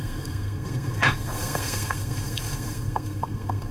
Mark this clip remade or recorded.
remade